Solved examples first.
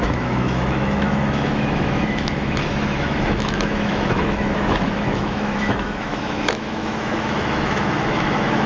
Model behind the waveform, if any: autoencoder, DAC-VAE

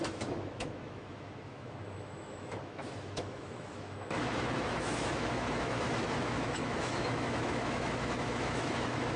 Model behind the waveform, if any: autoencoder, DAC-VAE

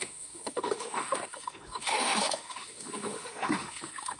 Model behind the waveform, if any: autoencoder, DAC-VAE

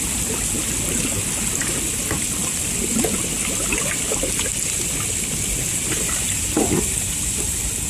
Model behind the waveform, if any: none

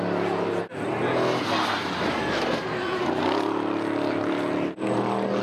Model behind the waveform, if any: none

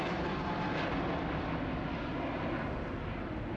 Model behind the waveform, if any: none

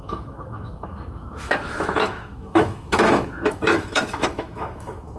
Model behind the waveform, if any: autoencoder, DAC-VAE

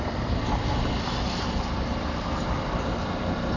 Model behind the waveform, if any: none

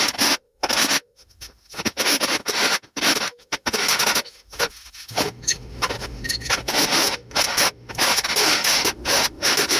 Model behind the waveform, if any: autoencoder, DAC-VAE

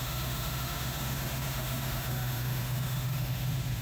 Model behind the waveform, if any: autoencoder, DAC-VAE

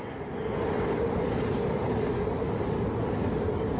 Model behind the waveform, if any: none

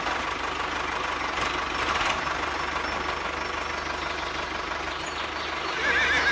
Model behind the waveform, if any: none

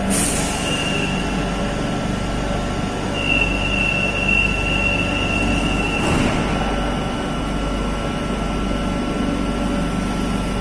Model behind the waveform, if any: none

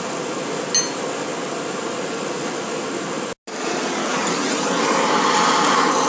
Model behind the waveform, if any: none